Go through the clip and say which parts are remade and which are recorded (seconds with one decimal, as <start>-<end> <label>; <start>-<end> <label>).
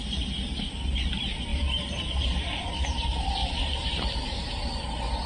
0.0-1.5 recorded; 1.5-2.9 remade; 2.9-3.4 recorded; 3.4-4.5 remade; 4.5-5.3 recorded